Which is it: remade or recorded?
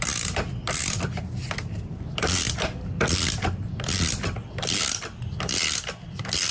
remade